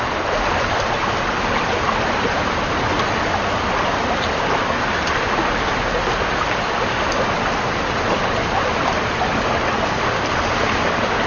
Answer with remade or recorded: recorded